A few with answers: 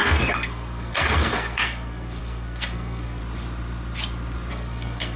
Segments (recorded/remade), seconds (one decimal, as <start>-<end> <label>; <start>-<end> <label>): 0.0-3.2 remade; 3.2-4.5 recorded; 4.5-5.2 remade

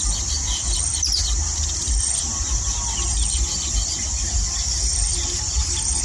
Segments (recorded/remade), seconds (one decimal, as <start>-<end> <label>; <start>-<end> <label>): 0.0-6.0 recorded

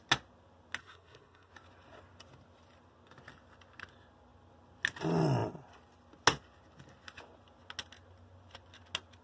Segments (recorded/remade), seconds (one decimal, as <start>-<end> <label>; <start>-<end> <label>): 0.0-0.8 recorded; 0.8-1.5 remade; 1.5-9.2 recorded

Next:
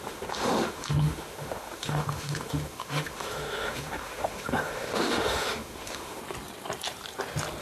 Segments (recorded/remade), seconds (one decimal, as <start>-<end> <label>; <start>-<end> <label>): 0.0-6.2 remade; 6.2-7.6 recorded

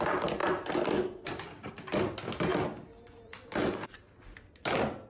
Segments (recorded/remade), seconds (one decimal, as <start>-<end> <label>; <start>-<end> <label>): 0.0-5.1 recorded

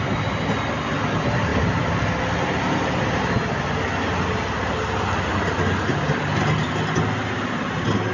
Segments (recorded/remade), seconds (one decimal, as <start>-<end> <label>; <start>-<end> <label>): 0.0-8.1 recorded